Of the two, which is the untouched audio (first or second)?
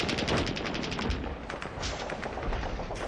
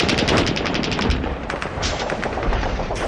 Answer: first